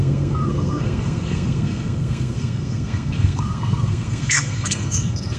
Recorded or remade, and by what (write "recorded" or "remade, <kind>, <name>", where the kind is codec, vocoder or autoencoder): remade, codec, SNAC